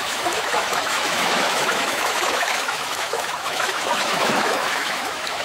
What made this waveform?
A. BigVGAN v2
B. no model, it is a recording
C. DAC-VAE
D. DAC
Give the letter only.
C